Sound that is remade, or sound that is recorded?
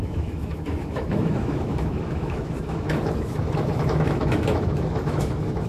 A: remade